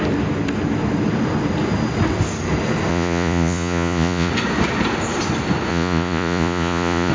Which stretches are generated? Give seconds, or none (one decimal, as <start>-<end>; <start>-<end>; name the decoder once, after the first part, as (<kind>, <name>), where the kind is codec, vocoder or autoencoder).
2.9-4.3 (vocoder, Vocos); 5.7-7.1